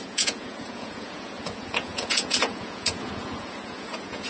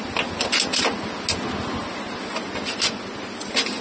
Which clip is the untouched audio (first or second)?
second